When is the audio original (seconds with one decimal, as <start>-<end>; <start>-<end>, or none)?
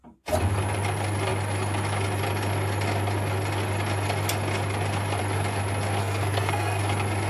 0.0-6.0; 6.8-7.3